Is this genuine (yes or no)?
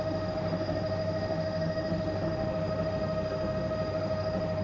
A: no